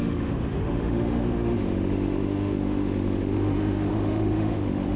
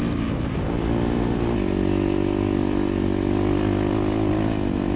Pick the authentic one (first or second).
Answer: second